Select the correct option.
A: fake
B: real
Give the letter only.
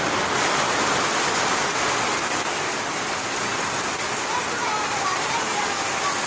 B